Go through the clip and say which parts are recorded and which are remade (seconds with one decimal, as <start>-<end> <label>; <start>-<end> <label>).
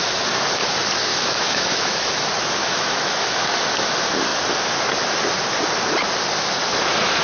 0.0-1.1 recorded; 1.1-2.1 remade; 2.1-2.6 recorded; 2.6-3.5 remade; 3.5-7.2 recorded